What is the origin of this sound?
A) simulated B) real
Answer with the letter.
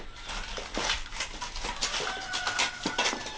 B